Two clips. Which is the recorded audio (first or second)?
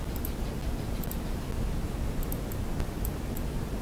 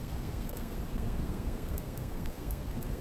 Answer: first